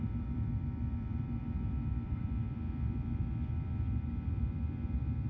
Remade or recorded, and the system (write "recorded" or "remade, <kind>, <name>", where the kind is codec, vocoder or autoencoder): remade, vocoder, BigVGAN v2